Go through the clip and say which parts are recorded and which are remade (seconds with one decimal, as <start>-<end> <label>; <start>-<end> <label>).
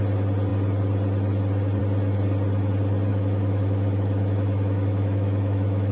0.0-3.1 recorded; 3.1-5.9 remade